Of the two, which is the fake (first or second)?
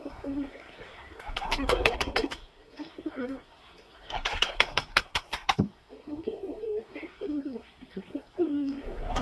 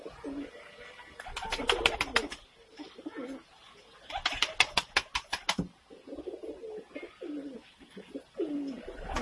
first